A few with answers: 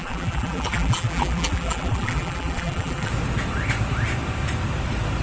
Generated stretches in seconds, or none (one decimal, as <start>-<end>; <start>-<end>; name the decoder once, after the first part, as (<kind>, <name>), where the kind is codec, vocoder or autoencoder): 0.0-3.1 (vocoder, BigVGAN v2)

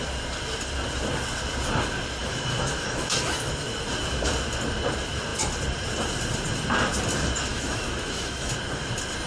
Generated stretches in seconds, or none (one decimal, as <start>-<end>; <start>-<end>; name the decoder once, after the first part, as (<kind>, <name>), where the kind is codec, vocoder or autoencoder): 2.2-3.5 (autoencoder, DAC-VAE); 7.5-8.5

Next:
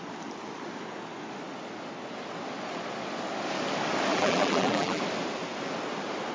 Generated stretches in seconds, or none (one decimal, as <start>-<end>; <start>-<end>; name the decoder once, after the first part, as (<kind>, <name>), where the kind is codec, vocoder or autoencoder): 4.1-5.0 (vocoder, BigVGAN v2)

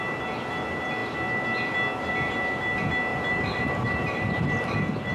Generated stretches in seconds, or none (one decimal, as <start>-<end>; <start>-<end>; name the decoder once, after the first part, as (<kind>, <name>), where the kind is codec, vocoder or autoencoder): 3.1-5.1 (vocoder, BigVGAN v2)